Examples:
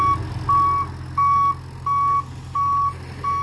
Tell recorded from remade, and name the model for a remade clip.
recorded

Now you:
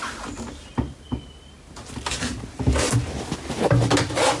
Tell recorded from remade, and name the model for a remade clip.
recorded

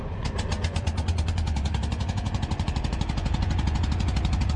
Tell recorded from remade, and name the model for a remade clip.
remade, vocoder, Vocos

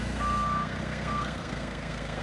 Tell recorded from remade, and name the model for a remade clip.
remade, codec, SNAC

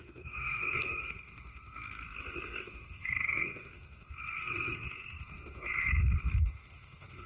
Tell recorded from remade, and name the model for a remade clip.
remade, codec, SNAC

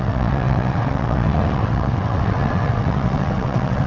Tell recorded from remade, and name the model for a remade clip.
remade, vocoder, WaveNeXt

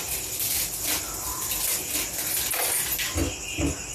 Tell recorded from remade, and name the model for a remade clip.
recorded